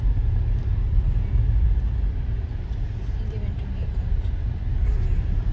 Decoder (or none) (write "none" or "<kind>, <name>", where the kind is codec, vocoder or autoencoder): none